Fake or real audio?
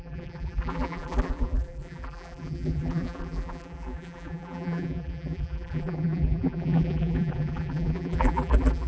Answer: fake